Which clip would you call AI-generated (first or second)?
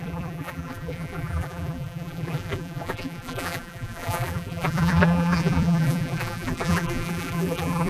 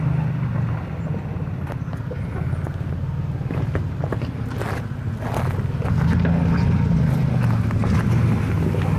first